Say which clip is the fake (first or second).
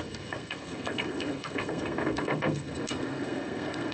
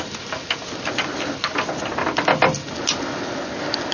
first